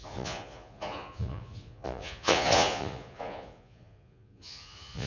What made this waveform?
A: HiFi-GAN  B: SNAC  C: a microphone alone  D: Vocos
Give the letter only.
D